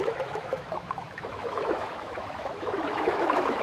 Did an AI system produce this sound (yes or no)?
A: yes